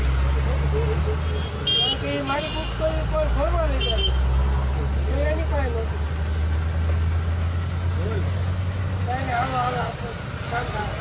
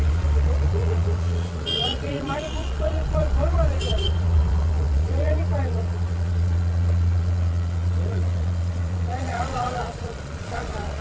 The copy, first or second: second